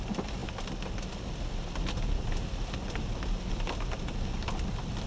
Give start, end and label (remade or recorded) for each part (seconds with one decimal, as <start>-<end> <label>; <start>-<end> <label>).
0.0-5.1 recorded